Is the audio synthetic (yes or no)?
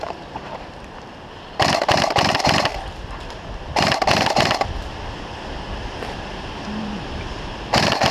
no